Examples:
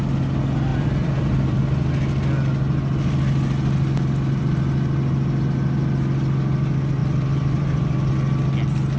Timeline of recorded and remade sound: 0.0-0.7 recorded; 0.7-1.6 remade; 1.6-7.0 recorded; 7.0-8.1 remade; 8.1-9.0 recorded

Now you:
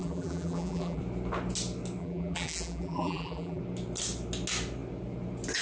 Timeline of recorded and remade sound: 0.0-1.0 remade; 1.0-2.0 recorded; 2.0-3.6 remade; 3.6-5.6 recorded

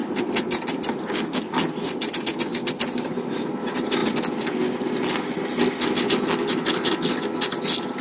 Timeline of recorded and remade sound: 0.0-2.5 recorded; 2.5-3.5 remade; 3.5-8.0 recorded

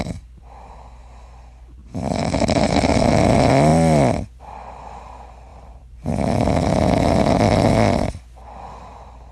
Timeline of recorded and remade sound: 0.0-5.5 recorded; 5.5-6.1 remade; 6.1-9.3 recorded